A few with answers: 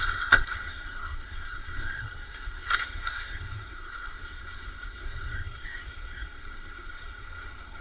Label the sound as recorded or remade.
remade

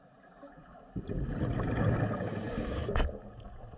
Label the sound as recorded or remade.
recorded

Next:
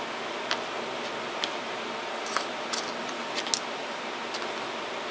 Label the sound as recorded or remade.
recorded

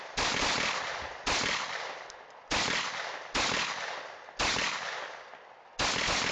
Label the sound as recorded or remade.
recorded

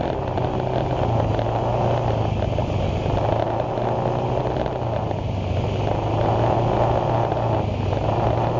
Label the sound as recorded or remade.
recorded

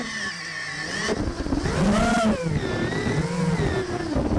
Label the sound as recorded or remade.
recorded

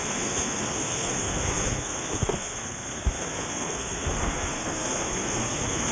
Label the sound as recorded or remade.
remade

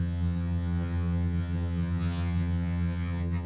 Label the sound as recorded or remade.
remade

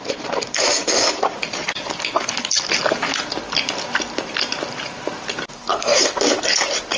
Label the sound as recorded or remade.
recorded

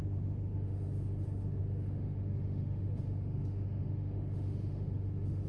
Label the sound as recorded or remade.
remade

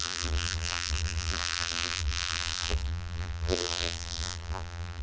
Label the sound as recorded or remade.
remade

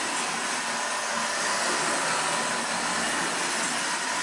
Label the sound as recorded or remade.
recorded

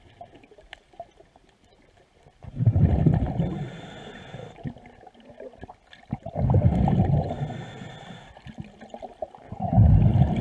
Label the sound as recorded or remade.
recorded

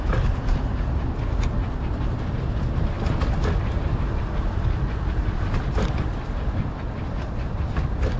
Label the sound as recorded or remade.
recorded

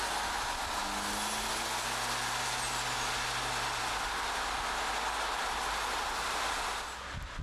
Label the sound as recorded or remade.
recorded